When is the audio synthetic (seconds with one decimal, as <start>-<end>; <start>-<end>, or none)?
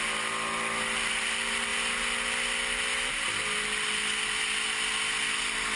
none